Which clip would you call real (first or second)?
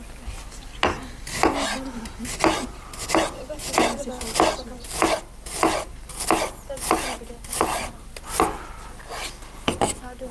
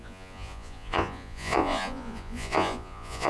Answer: first